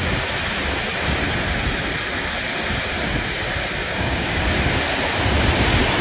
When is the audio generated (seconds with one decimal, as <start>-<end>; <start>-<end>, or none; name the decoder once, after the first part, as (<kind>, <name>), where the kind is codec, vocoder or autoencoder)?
3.8-4.5 (codec, DAC)